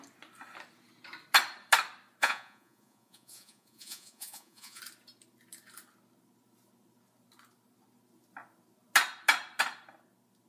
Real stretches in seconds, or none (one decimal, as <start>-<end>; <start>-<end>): 0.0-2.2; 4.8-10.5